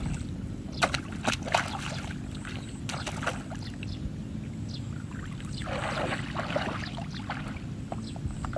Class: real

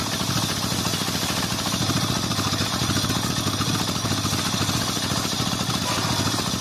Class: real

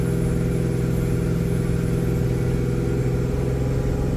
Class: real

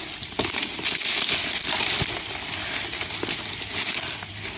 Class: real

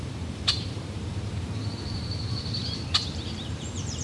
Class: fake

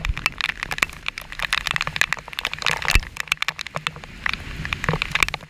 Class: real